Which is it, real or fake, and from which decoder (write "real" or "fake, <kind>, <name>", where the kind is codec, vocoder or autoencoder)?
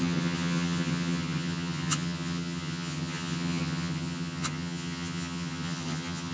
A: fake, vocoder, HiFi-GAN